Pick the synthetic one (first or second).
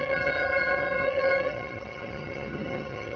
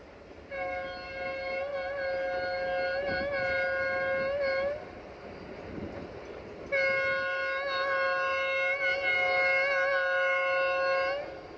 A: first